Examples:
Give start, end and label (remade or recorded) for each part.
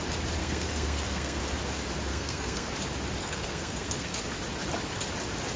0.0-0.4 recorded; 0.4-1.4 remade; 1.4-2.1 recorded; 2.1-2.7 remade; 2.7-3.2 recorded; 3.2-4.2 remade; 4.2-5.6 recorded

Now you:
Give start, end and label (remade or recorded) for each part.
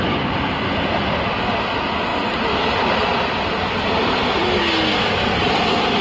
0.0-2.1 recorded; 2.1-4.6 remade; 4.6-6.0 recorded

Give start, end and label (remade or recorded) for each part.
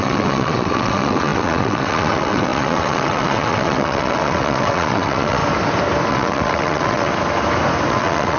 0.0-5.4 remade; 5.4-6.1 recorded; 6.1-7.1 remade; 7.1-7.9 recorded; 7.9-8.4 remade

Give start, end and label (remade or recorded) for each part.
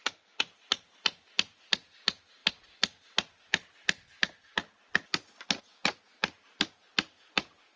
0.0-7.8 recorded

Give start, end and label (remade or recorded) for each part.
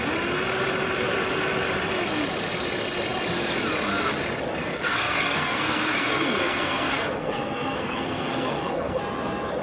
0.0-4.6 recorded; 4.6-9.0 remade; 9.0-9.6 recorded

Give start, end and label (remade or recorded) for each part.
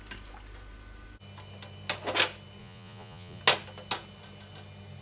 0.0-2.6 recorded; 2.6-3.4 remade; 3.4-5.0 recorded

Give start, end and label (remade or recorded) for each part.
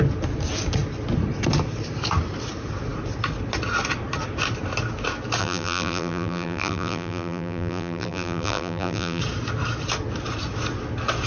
0.0-5.4 recorded; 5.4-9.2 remade; 9.2-11.3 recorded